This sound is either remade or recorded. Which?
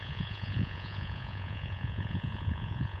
remade